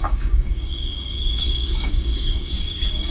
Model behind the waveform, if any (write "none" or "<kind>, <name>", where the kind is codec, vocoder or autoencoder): codec, DAC